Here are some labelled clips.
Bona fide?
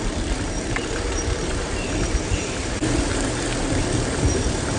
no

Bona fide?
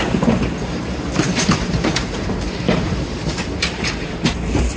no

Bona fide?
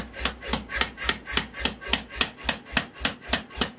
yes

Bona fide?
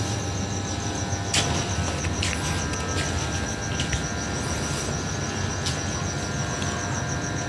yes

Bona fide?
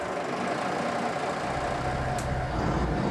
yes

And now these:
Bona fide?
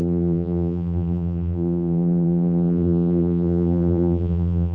no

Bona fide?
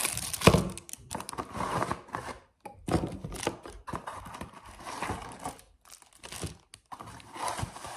yes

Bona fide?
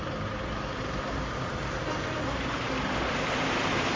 no